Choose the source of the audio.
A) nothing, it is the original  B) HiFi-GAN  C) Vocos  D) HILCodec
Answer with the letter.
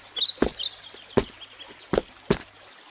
A